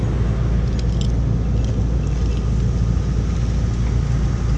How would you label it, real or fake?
real